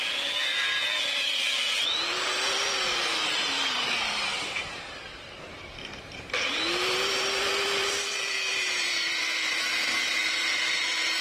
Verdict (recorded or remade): remade